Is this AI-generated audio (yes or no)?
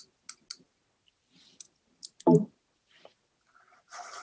no